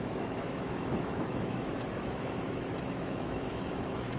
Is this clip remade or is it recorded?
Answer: remade